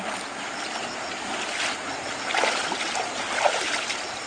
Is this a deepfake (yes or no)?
no